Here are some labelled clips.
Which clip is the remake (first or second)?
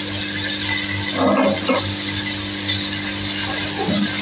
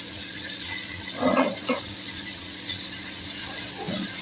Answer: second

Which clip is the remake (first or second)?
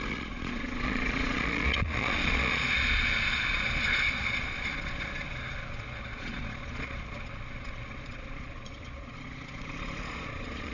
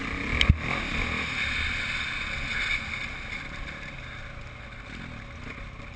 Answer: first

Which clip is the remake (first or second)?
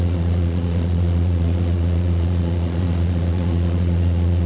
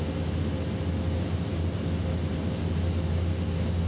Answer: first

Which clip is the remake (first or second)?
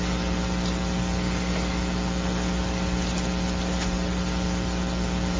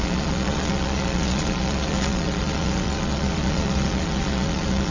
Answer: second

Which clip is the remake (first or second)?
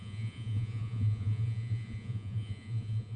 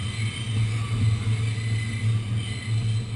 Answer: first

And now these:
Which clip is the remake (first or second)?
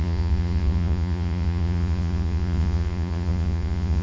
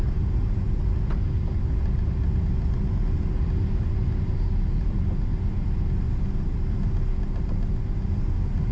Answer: first